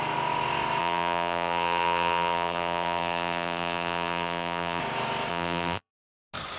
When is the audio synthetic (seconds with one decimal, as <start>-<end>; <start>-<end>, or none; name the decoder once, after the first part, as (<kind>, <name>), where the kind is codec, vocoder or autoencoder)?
0.8-4.8 (vocoder, BigVGAN v2); 5.3-5.9